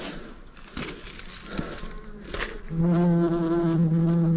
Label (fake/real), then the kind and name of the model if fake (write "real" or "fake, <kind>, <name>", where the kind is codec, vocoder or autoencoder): real